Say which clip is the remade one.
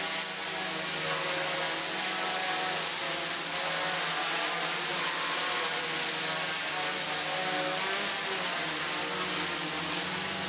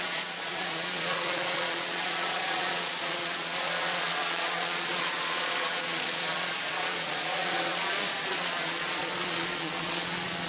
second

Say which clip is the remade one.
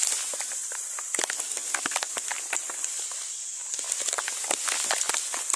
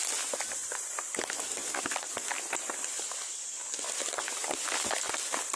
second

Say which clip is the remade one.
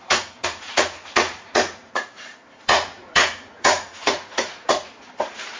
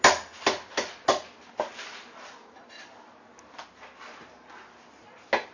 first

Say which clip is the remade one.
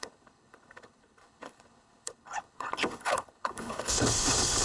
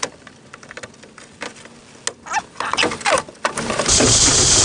first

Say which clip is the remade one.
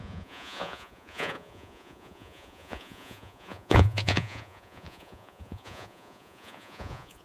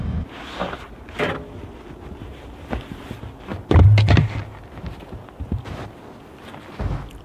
first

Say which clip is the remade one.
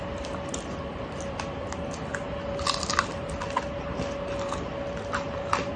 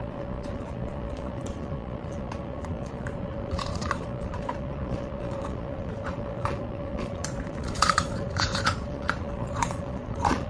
second